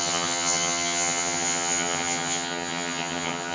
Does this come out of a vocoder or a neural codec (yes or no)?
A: yes